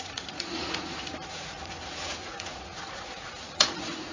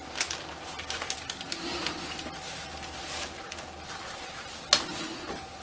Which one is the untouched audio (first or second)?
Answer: second